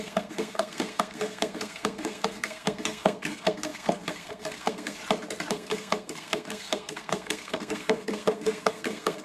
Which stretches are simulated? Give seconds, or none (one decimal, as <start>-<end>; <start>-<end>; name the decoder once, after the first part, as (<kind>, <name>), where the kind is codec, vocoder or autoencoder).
0.0-5.0 (codec, SNAC); 5.5-9.2